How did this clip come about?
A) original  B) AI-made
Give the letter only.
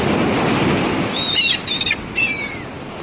A